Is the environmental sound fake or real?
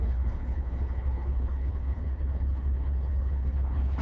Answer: fake